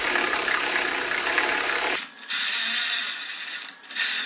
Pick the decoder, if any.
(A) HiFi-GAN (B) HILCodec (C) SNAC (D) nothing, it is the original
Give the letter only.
D